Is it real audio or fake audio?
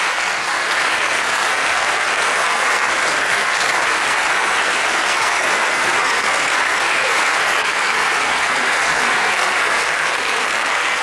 fake